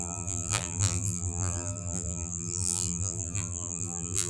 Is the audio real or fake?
fake